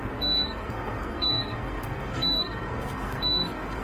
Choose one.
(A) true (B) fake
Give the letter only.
B